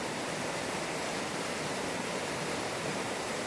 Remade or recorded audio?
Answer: remade